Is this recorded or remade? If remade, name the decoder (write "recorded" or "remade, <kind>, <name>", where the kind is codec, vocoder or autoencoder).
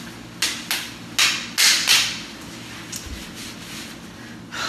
recorded